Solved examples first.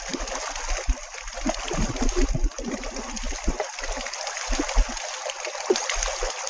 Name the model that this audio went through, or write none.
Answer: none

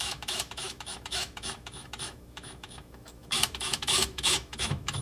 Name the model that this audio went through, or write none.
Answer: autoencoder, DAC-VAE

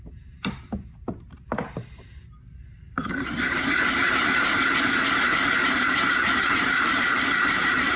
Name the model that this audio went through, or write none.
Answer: vocoder, BigVGAN v2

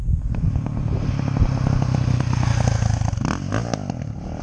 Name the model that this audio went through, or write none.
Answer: none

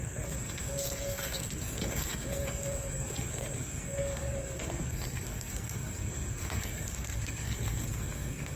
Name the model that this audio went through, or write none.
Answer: codec, SNAC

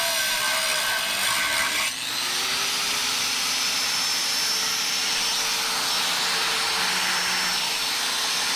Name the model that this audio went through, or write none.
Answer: none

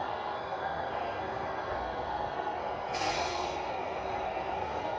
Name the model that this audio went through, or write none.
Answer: codec, SNAC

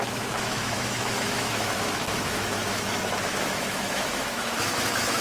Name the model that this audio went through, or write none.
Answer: autoencoder, DAC-VAE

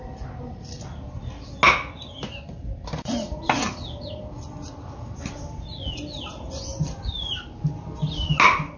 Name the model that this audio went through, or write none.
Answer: none